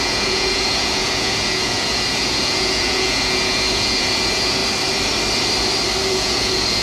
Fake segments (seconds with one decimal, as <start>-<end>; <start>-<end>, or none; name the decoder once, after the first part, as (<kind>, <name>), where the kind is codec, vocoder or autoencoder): 0.0-4.6 (vocoder, Vocos); 6.1-6.8